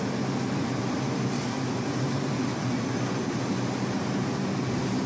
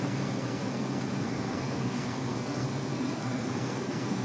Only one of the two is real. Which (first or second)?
first